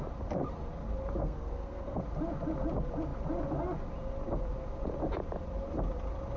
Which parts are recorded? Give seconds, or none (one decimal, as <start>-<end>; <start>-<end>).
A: 0.0-1.2; 2.0-6.4